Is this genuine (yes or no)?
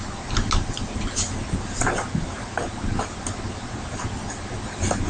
yes